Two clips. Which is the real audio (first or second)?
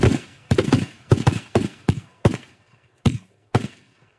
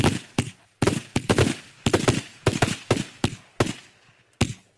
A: second